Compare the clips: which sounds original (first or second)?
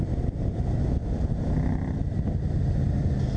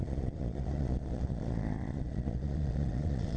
first